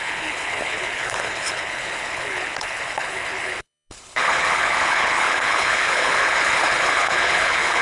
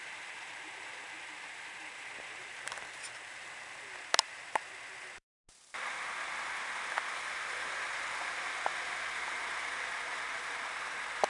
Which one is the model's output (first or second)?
first